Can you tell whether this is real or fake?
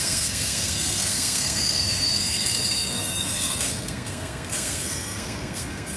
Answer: fake